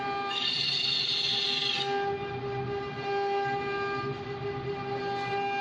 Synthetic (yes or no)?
no